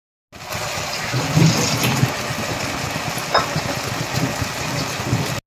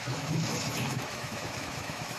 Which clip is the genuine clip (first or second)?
first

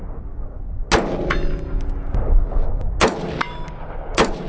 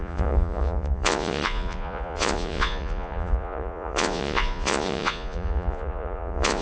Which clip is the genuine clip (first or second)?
first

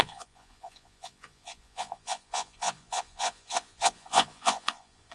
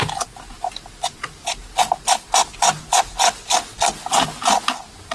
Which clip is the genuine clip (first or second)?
second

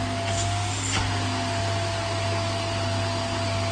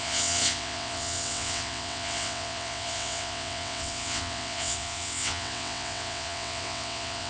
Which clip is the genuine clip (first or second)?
first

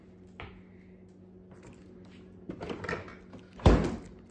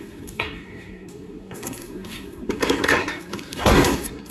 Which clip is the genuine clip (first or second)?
first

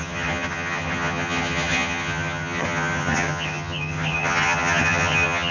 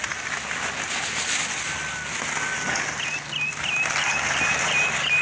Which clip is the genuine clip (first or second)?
second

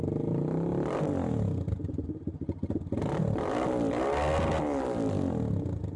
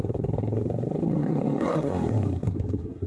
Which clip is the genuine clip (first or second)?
first